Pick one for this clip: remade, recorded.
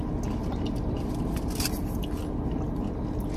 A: recorded